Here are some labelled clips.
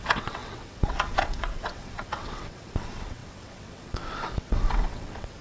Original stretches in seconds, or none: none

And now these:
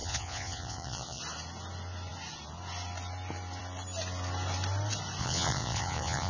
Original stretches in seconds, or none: 1.2-5.2

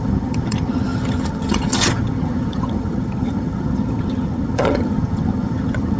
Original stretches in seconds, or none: none

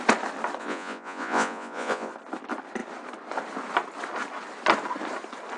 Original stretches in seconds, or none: 0.0-0.6; 2.1-5.6

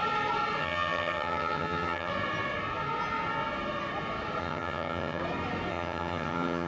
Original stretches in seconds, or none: 0.0-0.6; 2.1-4.4; 5.2-5.7

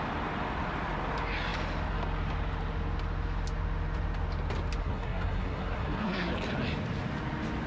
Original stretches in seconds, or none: 0.0-4.8; 6.3-7.7

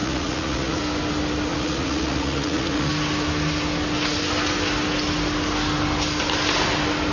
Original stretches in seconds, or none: 0.8-1.5; 2.9-7.1

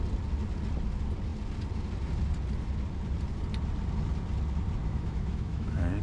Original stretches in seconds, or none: 0.0-4.8